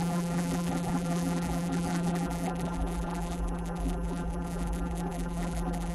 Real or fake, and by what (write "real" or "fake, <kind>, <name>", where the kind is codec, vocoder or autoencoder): fake, vocoder, BigVGAN v2